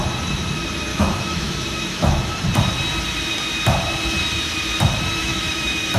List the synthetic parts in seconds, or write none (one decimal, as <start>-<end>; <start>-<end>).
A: 0.9-2.4; 5.2-6.0